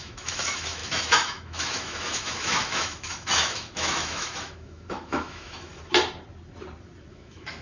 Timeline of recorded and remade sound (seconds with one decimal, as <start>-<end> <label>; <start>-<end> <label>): 0.0-5.7 remade; 5.7-7.1 recorded; 7.1-7.6 remade